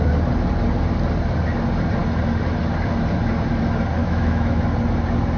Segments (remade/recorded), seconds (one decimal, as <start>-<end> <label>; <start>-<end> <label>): 0.0-4.0 recorded; 4.0-4.6 remade; 4.6-5.4 recorded